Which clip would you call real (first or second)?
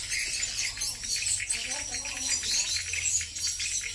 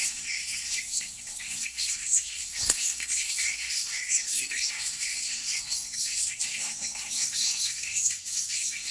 first